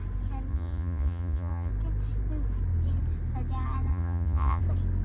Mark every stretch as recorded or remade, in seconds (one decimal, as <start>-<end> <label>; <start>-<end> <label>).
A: 0.0-0.5 recorded; 0.5-1.7 remade; 1.7-3.9 recorded; 3.9-4.6 remade; 4.6-5.0 recorded